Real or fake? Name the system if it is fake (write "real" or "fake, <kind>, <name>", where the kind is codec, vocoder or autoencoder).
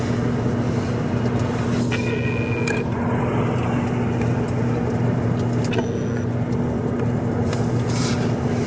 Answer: real